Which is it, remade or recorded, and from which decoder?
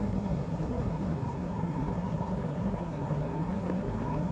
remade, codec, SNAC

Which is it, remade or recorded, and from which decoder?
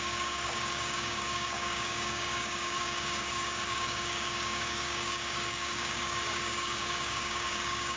remade, codec, DAC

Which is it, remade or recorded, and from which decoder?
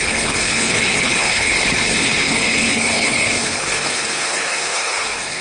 remade, codec, HILCodec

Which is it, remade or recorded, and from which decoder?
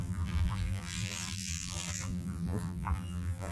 remade, vocoder, BigVGAN v2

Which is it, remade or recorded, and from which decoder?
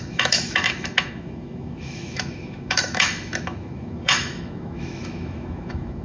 remade, autoencoder, DAC-VAE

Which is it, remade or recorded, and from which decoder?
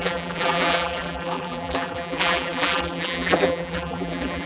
remade, vocoder, BigVGAN v2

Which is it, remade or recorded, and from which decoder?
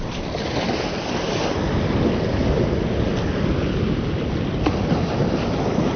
recorded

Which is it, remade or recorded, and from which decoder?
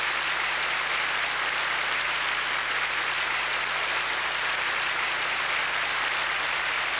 recorded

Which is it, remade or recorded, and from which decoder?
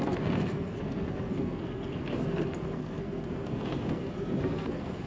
remade, codec, SNAC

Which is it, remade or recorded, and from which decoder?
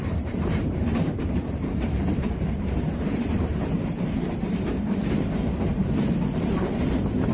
remade, vocoder, BigVGAN v2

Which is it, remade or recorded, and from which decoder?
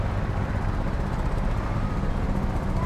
recorded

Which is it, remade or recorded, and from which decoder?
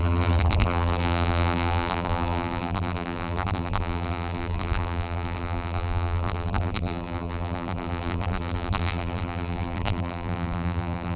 remade, vocoder, BigVGAN v2